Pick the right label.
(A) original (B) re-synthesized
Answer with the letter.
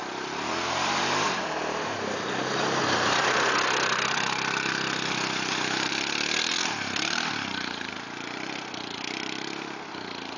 B